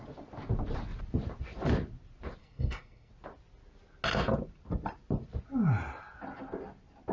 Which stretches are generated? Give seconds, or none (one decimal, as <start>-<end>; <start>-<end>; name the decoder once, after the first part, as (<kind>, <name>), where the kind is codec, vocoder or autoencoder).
2.4-3.1 (codec, SNAC)